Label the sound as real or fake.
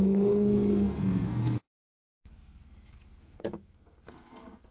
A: fake